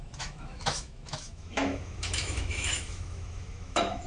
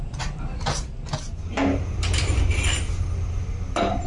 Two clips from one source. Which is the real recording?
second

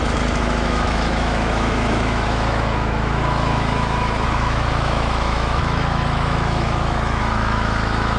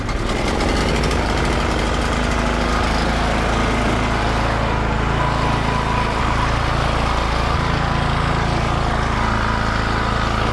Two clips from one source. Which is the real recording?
second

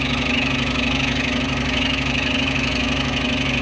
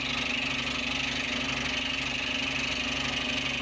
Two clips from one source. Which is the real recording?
second